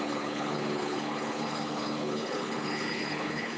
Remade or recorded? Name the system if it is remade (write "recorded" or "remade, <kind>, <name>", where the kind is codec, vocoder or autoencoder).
remade, codec, HILCodec